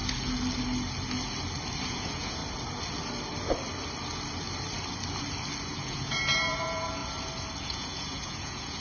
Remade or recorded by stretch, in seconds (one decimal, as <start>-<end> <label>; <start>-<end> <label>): 0.0-1.9 recorded; 1.9-2.4 remade; 2.4-5.7 recorded; 5.7-7.0 remade; 7.0-7.6 recorded; 7.6-8.8 remade